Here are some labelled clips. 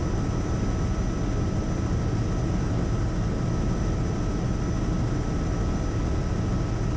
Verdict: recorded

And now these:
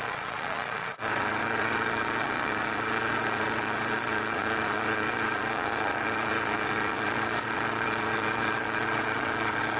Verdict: remade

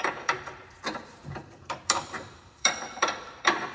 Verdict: remade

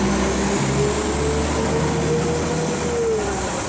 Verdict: recorded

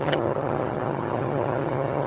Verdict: remade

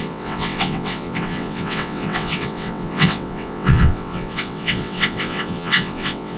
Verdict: remade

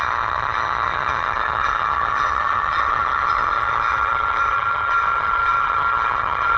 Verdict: remade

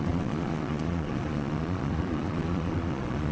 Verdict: remade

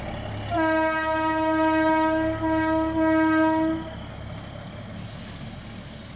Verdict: recorded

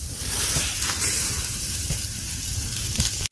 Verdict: remade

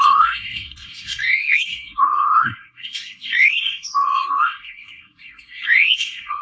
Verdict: remade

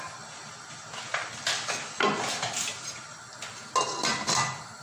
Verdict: recorded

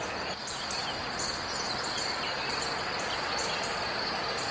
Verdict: recorded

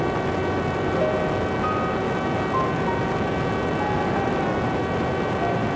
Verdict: recorded